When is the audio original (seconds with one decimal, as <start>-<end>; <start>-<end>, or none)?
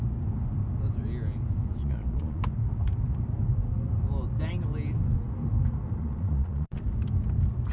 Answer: 0.0-1.8; 2.4-6.0; 6.8-7.7